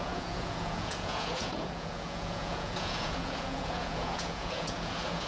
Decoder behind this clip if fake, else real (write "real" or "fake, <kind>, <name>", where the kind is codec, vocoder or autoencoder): fake, vocoder, Vocos